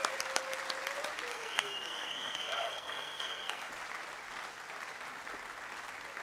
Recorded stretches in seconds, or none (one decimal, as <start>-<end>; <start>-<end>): 0.0-1.3; 3.7-6.2